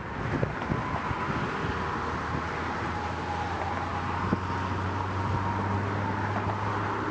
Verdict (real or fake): real